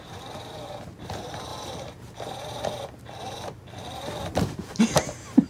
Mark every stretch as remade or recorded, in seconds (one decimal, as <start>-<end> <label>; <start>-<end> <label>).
0.0-5.5 remade